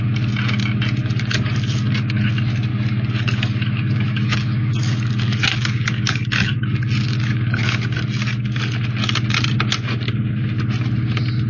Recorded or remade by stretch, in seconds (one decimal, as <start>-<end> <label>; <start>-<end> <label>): 0.0-1.0 recorded; 1.0-2.3 remade; 2.3-2.7 recorded; 2.7-7.6 remade; 7.6-11.5 recorded